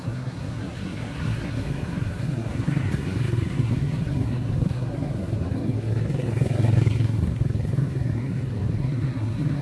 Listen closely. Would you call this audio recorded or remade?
remade